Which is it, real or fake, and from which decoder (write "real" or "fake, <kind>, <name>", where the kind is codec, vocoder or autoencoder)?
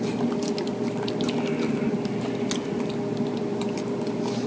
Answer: real